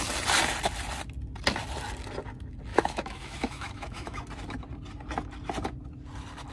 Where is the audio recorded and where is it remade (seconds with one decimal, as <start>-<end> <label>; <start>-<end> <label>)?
0.0-2.7 recorded; 2.7-4.2 remade; 4.2-6.5 recorded